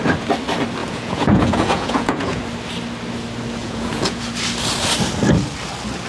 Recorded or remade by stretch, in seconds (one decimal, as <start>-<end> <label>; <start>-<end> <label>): 0.0-0.8 recorded; 0.8-2.4 remade; 2.4-3.6 recorded; 3.6-4.2 remade; 4.2-6.1 recorded